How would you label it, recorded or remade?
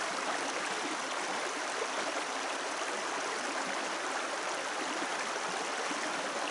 recorded